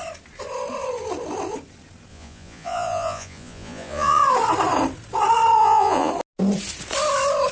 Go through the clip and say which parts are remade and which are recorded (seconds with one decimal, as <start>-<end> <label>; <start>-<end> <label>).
0.0-2.1 recorded; 2.1-4.2 remade; 4.2-5.6 recorded; 5.6-6.1 remade; 6.1-7.5 recorded